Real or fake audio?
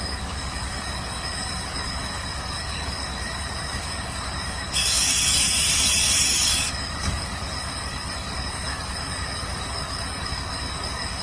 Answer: fake